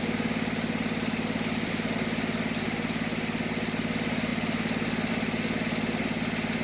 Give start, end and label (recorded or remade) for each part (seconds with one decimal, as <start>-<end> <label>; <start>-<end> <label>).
0.0-6.6 recorded